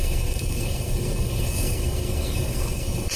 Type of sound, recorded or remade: remade